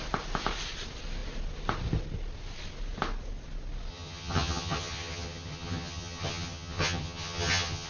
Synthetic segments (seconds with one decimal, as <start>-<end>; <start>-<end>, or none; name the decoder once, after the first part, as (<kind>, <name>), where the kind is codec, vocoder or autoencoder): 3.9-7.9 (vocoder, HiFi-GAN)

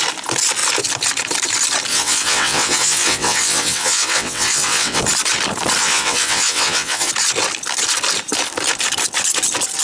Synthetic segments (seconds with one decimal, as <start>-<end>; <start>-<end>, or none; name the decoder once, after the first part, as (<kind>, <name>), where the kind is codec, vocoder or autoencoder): 1.9-5.0 (vocoder, WaveNeXt); 5.8-7.1

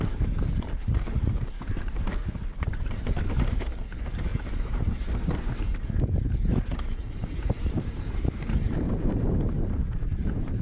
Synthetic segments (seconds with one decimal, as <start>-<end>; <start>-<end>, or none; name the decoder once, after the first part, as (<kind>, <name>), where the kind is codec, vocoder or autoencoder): 0.0-2.1 (vocoder, BigVGAN v2); 2.7-10.6

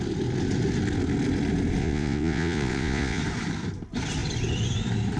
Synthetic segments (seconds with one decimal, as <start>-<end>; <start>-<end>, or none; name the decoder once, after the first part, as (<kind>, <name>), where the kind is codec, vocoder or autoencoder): 1.8-3.2 (vocoder, Vocos)

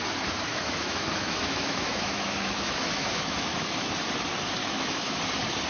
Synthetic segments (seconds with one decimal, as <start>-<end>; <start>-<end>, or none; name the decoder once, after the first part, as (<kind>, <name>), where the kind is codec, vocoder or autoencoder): 0.5-3.9 (autoencoder, DAC-VAE); 4.6-5.2

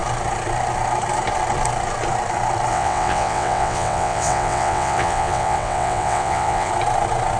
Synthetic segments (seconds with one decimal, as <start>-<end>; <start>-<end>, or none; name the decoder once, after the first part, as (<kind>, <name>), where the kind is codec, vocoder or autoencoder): 2.7-6.7 (vocoder, WaveNeXt)

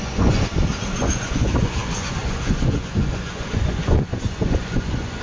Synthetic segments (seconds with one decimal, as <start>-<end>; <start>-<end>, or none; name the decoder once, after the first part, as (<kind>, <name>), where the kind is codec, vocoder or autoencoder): 0.0-0.5 (vocoder, Vocos); 1.0-5.2